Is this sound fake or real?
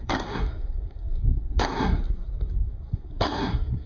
fake